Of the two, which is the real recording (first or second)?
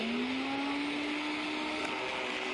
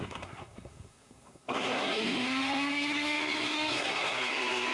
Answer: first